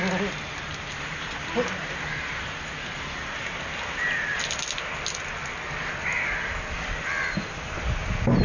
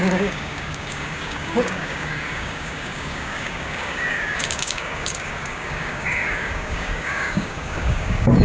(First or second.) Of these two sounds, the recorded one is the first